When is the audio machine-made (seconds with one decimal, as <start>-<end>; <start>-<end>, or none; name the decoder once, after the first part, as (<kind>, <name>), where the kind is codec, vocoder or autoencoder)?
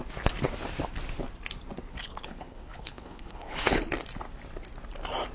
1.9-3.8 (codec, HILCodec)